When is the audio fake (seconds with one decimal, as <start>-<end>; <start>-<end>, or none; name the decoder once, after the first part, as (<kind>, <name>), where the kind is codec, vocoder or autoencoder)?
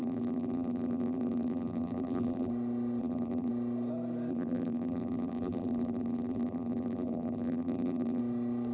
0.0-2.5 (vocoder, BigVGAN v2); 3.0-3.5; 4.3-8.2